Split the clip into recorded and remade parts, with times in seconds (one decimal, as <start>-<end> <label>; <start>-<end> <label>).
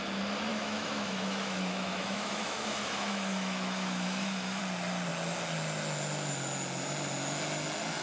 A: 0.0-0.5 recorded; 0.5-4.6 remade; 4.6-8.0 recorded